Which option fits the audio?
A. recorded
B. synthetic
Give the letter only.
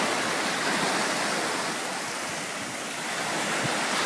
A